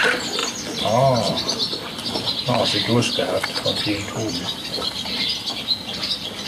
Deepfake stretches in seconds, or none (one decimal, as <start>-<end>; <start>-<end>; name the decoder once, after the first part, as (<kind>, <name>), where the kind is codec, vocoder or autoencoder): none